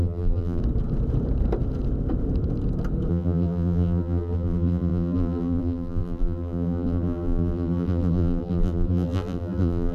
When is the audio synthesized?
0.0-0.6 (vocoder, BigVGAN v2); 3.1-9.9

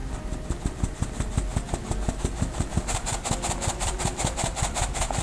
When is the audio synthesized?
0.6-1.5 (vocoder, BigVGAN v2); 2.2-5.2

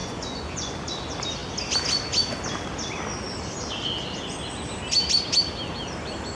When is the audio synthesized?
0.0-0.7 (vocoder, Vocos)

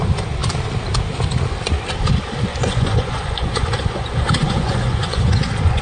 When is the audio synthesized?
2.5-5.8 (vocoder, Vocos)

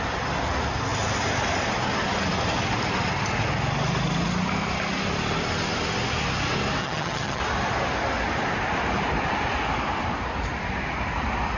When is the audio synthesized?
6.8-7.4 (vocoder, HiFi-GAN)

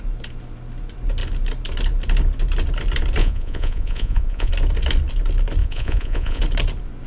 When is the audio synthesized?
3.2-4.5 (vocoder, Vocos); 5.6-6.4